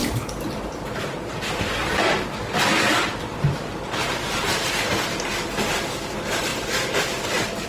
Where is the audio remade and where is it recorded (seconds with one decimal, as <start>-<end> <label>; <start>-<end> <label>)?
0.0-1.5 recorded; 1.5-7.7 remade

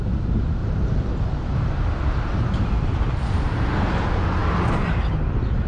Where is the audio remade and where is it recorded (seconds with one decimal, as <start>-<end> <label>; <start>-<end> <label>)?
0.0-0.6 recorded; 0.6-4.0 remade; 4.0-5.7 recorded

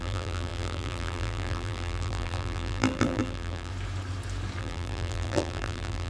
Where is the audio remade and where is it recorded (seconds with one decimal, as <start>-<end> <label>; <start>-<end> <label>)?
0.0-3.7 remade; 3.7-4.6 recorded; 4.6-6.1 remade

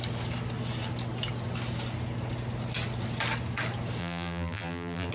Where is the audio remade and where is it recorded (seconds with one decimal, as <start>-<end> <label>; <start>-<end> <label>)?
0.0-4.0 recorded; 4.0-5.1 remade

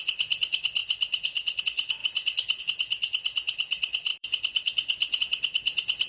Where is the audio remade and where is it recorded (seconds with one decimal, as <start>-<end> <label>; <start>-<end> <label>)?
0.0-0.8 recorded; 0.8-1.6 remade; 1.6-4.1 recorded; 4.1-5.2 remade; 5.2-6.1 recorded

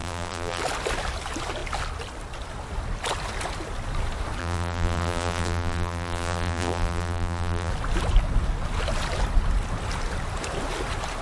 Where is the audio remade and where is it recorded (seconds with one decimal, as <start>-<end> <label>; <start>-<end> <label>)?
0.0-0.6 remade; 0.6-4.4 recorded; 4.4-7.7 remade; 7.7-11.2 recorded

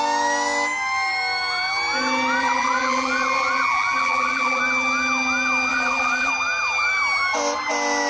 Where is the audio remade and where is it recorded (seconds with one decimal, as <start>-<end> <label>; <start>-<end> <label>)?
0.0-2.4 recorded; 2.4-4.6 remade; 4.6-5.7 recorded; 5.7-6.3 remade; 6.3-8.1 recorded